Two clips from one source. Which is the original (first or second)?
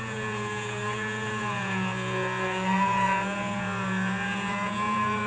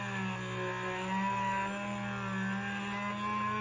second